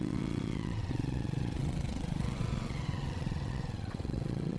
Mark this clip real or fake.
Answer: fake